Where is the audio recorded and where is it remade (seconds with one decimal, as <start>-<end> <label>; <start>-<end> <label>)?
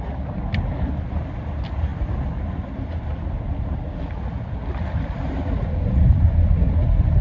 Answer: 0.0-7.2 recorded